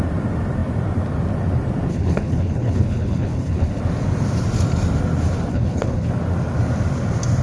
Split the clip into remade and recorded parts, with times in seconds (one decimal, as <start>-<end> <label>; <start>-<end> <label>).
0.0-1.9 recorded; 1.9-3.8 remade; 3.8-5.5 recorded; 5.5-6.1 remade; 6.1-7.4 recorded